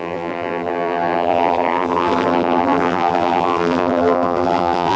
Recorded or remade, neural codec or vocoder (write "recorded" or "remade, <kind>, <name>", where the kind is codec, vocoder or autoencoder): remade, vocoder, BigVGAN v2